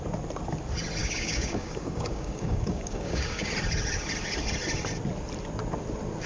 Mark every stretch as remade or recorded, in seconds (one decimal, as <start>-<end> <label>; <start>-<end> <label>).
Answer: 0.0-1.0 recorded; 1.0-3.5 remade; 3.5-6.3 recorded